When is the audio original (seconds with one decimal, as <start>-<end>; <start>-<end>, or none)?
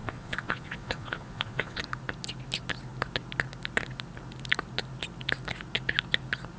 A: 1.8-6.6